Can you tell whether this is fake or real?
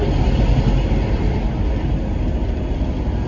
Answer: real